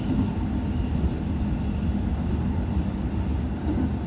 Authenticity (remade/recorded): recorded